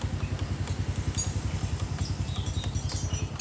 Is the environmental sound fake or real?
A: real